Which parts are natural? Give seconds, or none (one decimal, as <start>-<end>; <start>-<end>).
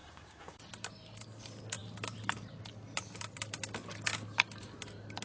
0.6-5.2